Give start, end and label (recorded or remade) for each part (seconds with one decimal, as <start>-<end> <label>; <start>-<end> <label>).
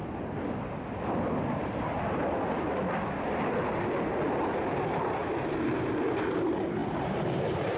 0.0-4.7 recorded; 4.7-5.2 remade; 5.2-5.7 recorded; 5.7-7.8 remade